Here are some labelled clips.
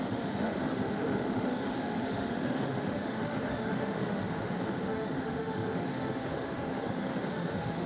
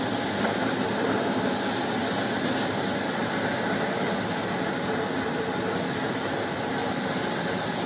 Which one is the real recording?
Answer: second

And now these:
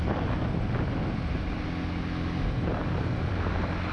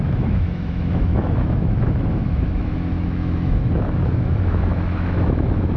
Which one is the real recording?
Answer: first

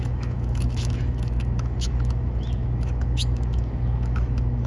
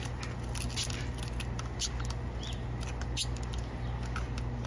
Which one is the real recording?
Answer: second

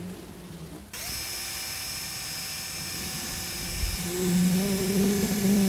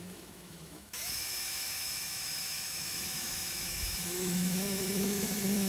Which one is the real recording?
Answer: first